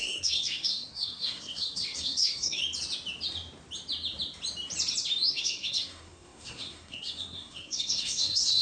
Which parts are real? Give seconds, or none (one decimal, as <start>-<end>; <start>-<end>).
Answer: 2.6-5.3